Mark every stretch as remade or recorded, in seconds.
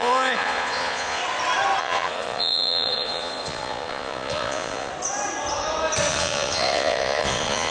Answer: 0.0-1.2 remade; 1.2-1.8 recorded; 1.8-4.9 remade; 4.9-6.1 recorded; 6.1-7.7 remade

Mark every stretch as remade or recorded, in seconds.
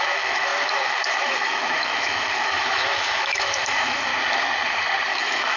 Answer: 0.0-4.1 remade; 4.1-5.1 recorded; 5.1-5.6 remade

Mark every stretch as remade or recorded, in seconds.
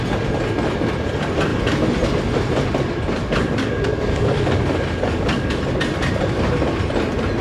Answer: 0.0-3.2 recorded; 3.2-5.6 remade; 5.6-7.4 recorded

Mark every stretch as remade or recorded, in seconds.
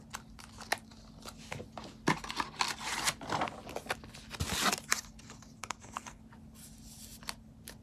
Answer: 0.0-5.6 recorded; 5.6-6.2 remade; 6.2-7.8 recorded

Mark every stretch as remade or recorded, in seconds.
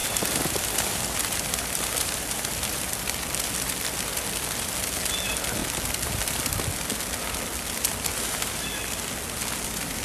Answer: 0.0-3.0 remade; 3.0-10.0 recorded